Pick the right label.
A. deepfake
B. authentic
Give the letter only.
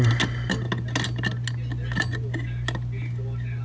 B